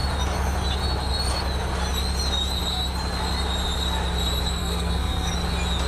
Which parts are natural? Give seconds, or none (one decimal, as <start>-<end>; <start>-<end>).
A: 0.0-4.6; 5.3-5.9